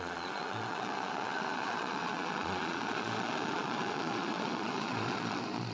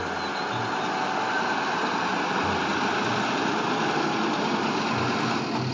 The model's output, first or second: first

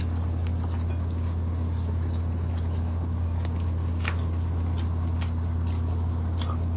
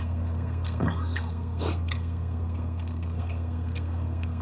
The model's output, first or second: second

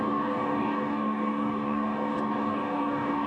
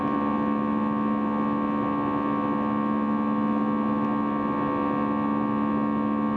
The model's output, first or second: first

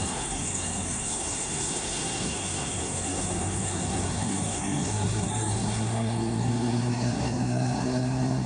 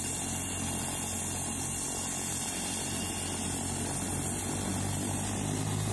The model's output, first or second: first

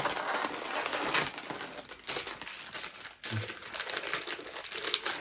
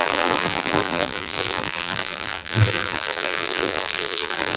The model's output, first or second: second